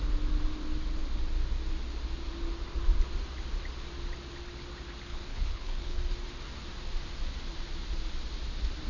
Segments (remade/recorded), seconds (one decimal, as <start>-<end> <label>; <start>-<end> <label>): 0.0-5.1 recorded; 5.1-6.0 remade; 6.0-8.9 recorded